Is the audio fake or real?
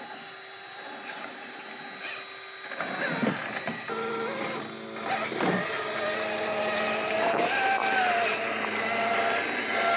real